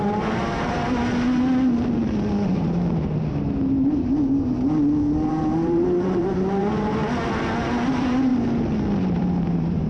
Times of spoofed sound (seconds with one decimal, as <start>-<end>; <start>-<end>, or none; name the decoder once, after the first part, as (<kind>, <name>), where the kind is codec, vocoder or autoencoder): 0.0-1.0 (vocoder, BigVGAN v2); 5.3-7.0; 7.6-8.3; 9.2-9.9